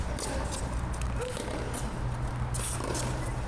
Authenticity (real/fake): real